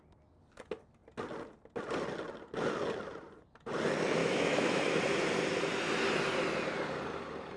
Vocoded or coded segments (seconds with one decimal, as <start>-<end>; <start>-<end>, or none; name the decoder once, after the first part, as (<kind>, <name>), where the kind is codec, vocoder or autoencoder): 4.2-5.0 (autoencoder, DAC-VAE)